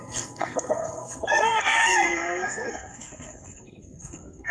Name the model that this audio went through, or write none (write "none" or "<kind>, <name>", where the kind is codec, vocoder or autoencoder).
codec, SNAC